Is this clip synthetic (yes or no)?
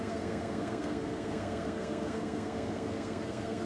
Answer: yes